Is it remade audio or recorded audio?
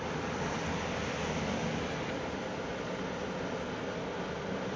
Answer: recorded